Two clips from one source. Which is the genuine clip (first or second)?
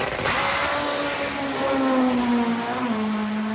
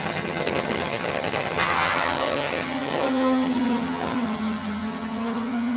first